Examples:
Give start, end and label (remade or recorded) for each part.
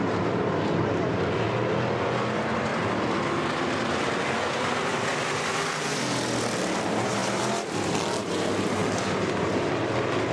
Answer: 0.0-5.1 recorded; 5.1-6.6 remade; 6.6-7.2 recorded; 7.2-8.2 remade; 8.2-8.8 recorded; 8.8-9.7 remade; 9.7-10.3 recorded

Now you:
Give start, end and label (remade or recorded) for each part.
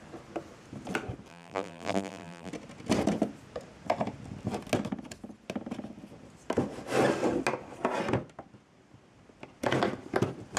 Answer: 0.0-1.3 recorded; 1.3-2.5 remade; 2.5-10.6 recorded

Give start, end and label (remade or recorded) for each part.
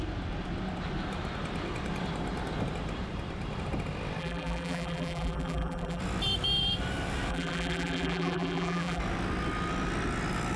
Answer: 0.0-4.2 recorded; 4.2-6.0 remade; 6.0-7.3 recorded; 7.3-9.0 remade; 9.0-10.6 recorded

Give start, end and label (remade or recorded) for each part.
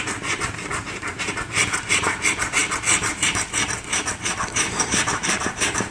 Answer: 0.0-2.6 remade; 2.6-3.1 recorded; 3.1-5.9 remade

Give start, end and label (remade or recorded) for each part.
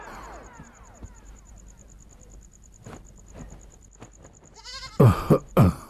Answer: 0.0-1.5 remade; 1.5-5.0 recorded; 5.0-5.9 remade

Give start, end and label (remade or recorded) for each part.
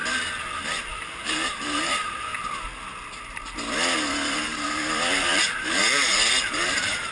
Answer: 0.0-0.9 recorded; 0.9-2.3 remade; 2.3-4.4 recorded; 4.4-5.8 remade; 5.8-6.4 recorded; 6.4-7.1 remade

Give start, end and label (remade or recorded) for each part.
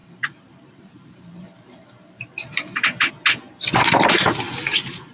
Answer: 0.0-3.1 remade; 3.1-5.1 recorded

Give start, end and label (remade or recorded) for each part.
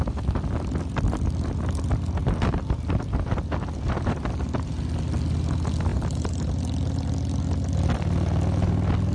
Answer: 0.0-2.2 recorded; 2.2-4.8 remade; 4.8-5.9 recorded; 5.9-6.5 remade; 6.5-9.1 recorded